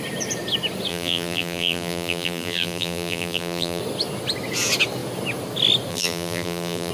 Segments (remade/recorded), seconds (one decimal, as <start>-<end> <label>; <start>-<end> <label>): 0.0-0.9 recorded; 0.9-3.8 remade; 3.8-5.9 recorded; 5.9-6.9 remade